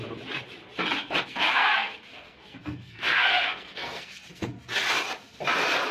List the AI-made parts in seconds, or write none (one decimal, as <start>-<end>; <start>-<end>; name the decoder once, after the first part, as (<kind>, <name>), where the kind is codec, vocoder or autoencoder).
1.0-4.5 (codec, SNAC)